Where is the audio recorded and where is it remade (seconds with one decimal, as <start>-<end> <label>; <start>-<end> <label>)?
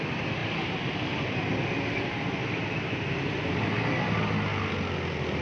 0.0-5.4 recorded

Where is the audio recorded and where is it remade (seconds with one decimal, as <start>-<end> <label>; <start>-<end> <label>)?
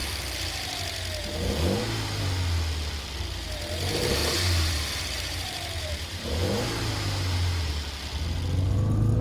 0.0-4.2 recorded; 4.2-7.7 remade; 7.7-9.2 recorded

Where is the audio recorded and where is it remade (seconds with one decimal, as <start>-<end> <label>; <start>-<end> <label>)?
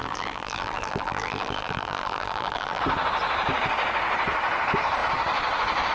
0.0-2.8 remade; 2.8-5.9 recorded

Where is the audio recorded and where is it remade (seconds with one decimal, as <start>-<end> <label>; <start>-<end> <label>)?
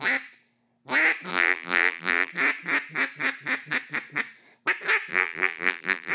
0.0-1.3 recorded; 1.3-2.3 remade; 2.3-5.1 recorded; 5.1-6.1 remade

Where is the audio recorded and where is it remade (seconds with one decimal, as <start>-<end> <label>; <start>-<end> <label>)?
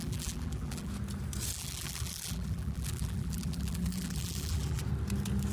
0.0-0.9 remade; 0.9-1.5 recorded; 1.5-4.8 remade; 4.8-5.5 recorded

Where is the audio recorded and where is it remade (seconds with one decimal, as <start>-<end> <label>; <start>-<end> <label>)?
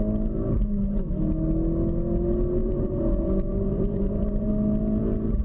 0.0-2.6 recorded; 2.6-4.5 remade; 4.5-5.4 recorded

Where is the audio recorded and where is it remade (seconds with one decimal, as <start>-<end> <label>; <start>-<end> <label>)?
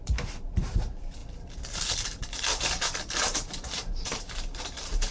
0.0-5.1 remade